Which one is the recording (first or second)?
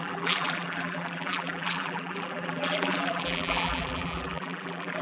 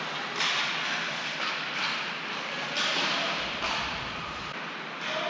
second